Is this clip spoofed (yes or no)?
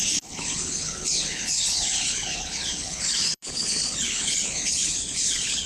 yes